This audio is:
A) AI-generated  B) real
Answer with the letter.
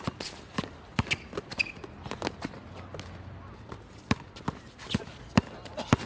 B